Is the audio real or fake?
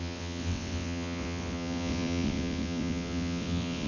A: fake